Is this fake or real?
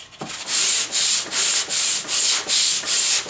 real